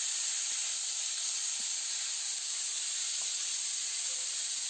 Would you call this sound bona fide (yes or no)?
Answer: yes